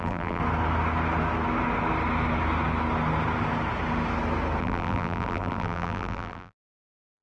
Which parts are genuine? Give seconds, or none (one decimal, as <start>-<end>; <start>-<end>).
0.4-4.6